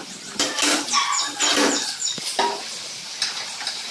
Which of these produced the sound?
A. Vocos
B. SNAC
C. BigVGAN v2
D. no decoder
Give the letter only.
D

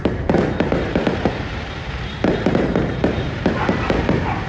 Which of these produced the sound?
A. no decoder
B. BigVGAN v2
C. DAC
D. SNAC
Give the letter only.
B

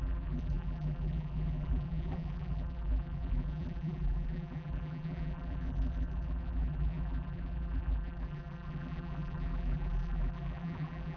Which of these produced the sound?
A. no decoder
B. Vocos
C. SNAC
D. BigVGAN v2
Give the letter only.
D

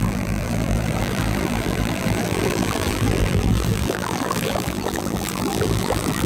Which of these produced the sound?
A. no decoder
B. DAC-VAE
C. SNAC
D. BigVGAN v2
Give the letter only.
D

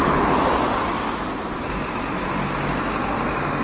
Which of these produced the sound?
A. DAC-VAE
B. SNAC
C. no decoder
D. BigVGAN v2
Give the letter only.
C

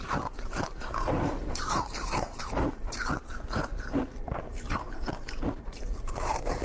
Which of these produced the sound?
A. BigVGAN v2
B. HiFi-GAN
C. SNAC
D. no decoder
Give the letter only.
A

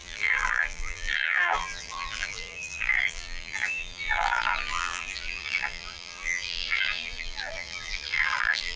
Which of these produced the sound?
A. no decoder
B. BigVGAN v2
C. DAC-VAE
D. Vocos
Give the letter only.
B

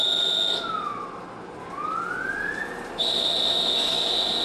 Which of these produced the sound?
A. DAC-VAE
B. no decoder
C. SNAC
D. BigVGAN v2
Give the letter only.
B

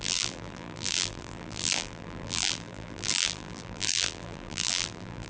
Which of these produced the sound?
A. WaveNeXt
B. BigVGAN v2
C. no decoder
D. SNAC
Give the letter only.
B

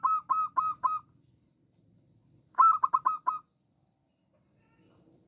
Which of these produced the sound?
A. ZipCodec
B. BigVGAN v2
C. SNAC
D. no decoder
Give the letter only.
D